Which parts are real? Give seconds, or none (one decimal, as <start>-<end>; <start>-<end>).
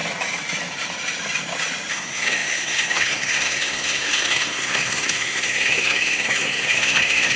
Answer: 0.0-1.9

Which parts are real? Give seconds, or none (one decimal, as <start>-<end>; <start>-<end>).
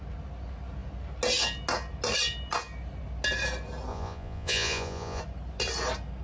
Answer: 0.0-3.9; 5.2-6.2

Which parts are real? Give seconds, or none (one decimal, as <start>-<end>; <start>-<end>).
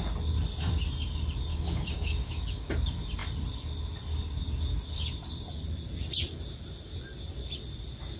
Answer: 0.0-1.5; 2.7-8.2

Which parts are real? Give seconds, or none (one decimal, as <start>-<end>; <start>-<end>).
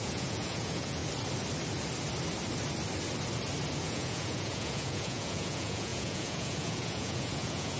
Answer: 1.0-3.8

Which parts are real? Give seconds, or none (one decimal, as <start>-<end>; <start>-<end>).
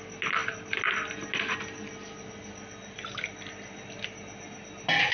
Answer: 0.0-5.1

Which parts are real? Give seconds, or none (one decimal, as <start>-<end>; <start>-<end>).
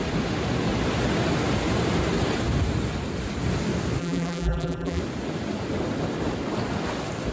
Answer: 0.0-4.0; 5.0-7.3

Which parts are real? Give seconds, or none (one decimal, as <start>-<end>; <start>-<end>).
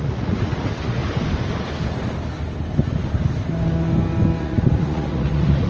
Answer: 1.0-4.4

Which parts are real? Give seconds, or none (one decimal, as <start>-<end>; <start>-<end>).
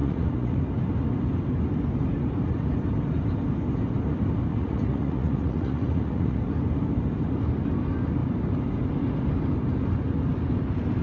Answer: 0.6-4.5; 6.4-11.0